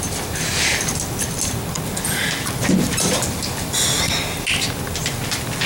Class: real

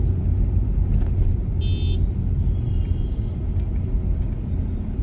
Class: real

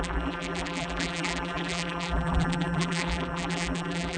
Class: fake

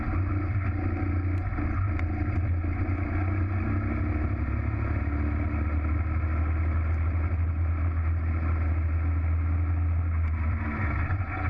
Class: real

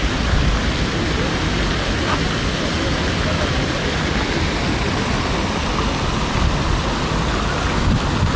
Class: real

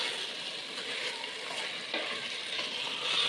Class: real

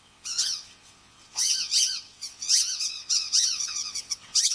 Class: fake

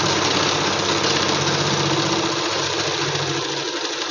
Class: real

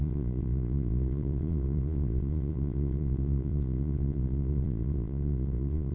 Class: fake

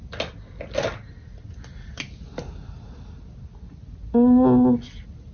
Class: real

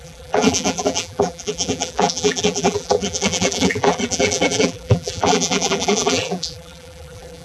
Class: fake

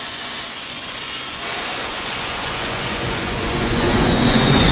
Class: fake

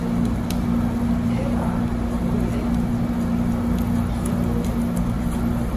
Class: real